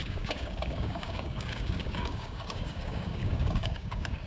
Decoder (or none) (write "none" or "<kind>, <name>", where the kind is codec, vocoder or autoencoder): codec, DAC